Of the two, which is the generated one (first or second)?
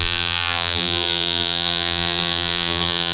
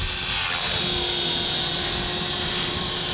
first